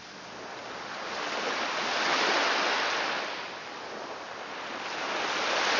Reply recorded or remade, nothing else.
recorded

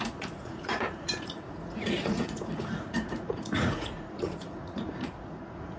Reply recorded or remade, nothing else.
remade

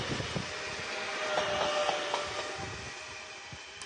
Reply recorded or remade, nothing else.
recorded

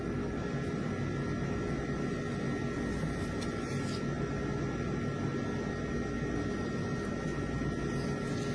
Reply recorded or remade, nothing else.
recorded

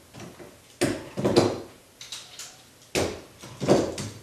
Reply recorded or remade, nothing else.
recorded